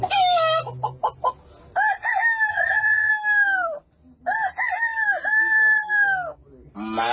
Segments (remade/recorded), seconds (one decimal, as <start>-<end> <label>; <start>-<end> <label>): 0.0-2.5 recorded; 2.5-3.1 remade; 3.1-7.1 recorded